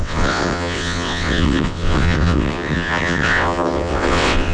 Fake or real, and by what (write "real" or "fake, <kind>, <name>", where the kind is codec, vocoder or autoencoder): fake, vocoder, WaveNeXt